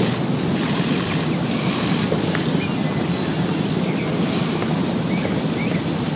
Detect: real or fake real